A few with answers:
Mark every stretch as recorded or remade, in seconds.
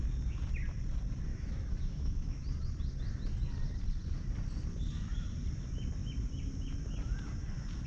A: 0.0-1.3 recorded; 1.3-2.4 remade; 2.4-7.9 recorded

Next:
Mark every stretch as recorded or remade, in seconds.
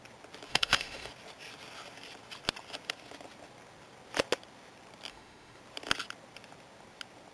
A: 0.0-0.5 recorded; 0.5-1.1 remade; 1.1-5.1 recorded; 5.1-5.6 remade; 5.6-7.3 recorded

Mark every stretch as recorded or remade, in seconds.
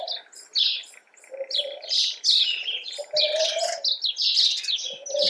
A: 0.0-5.3 recorded